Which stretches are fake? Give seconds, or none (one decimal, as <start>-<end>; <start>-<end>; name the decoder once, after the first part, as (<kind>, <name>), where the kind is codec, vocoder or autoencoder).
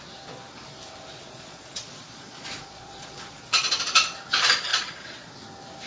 1.1-3.7 (vocoder, Vocos); 4.7-5.3